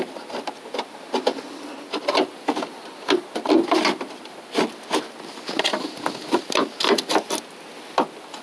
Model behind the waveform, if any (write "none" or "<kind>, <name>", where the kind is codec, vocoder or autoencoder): none